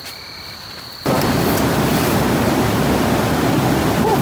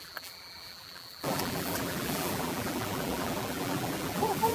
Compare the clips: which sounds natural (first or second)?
first